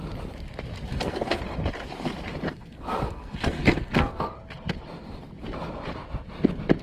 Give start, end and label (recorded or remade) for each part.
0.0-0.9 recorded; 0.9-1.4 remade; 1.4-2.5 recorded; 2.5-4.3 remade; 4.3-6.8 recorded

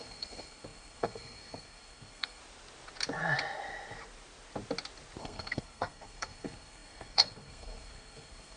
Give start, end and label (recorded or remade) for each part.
0.0-2.4 remade; 2.4-5.2 recorded; 5.2-8.6 remade